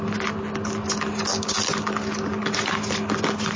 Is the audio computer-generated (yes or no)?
no